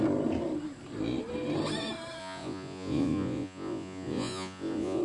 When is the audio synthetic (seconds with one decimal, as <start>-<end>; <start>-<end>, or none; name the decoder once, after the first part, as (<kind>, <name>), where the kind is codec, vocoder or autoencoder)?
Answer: 2.2-5.0 (vocoder, Vocos)